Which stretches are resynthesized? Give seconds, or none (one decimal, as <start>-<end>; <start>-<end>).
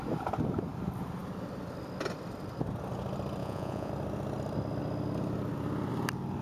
3.4-3.9